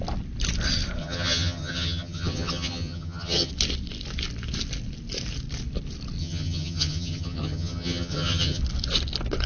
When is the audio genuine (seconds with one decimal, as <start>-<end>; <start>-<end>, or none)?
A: 0.0-1.0; 3.5-6.2; 8.6-9.5